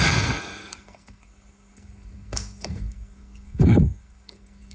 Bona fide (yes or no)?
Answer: no